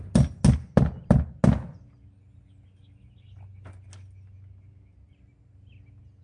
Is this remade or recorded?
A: recorded